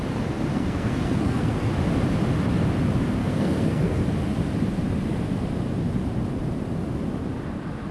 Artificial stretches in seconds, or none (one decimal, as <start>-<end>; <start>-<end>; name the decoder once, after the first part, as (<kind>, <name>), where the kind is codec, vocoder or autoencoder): 0.5-1.7 (codec, SNAC); 3.2-4.0